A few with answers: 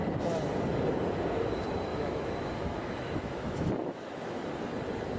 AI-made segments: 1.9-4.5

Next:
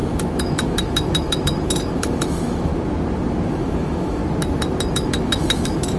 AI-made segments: 0.0-2.7; 3.5-4.2; 4.9-6.0